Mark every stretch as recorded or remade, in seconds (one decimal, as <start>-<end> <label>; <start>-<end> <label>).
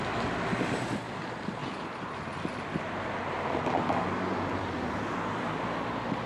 0.0-6.3 recorded